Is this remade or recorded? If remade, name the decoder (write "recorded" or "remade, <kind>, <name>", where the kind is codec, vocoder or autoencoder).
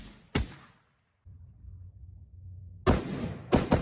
recorded